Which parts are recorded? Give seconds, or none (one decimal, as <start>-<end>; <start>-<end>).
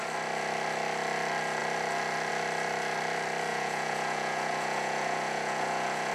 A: 0.0-3.5